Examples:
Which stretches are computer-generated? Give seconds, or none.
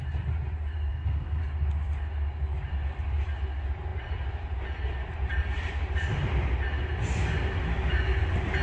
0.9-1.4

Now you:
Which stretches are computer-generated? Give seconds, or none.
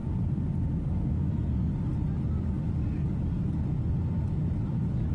0.9-1.7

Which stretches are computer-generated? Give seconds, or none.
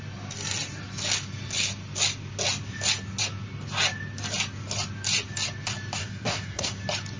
6.0-6.7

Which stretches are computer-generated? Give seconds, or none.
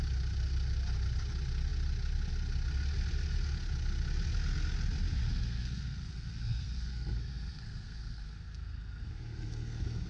5.2-10.1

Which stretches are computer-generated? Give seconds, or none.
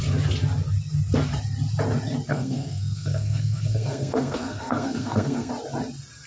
2.3-5.5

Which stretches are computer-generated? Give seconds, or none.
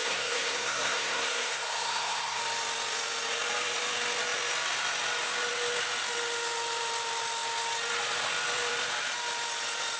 0.0-2.4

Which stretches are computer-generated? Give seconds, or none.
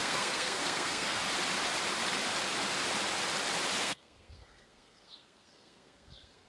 0.0-1.2; 3.8-6.5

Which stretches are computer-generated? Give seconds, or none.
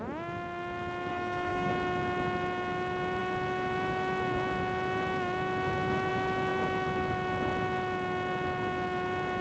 1.1-1.7